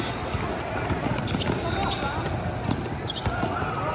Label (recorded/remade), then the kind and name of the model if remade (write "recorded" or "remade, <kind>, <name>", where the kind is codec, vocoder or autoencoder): recorded